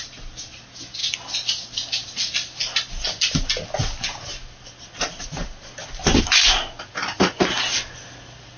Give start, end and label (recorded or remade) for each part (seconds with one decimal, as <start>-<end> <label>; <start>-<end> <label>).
0.0-8.6 recorded

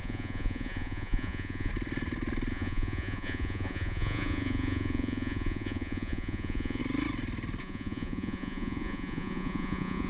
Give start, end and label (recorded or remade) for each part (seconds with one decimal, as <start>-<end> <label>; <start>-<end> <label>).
0.0-1.7 remade; 1.7-2.5 recorded; 2.5-6.8 remade; 6.8-7.6 recorded; 7.6-10.1 remade

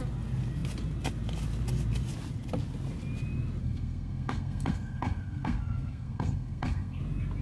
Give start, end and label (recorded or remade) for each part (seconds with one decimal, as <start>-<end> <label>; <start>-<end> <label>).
0.0-3.6 recorded; 3.6-7.0 remade; 7.0-7.4 recorded